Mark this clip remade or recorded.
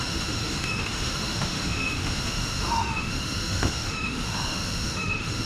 remade